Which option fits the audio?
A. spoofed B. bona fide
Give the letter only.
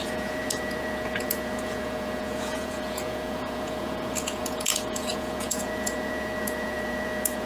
A